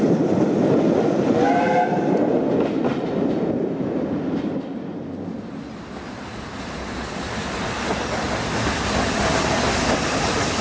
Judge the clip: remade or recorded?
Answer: recorded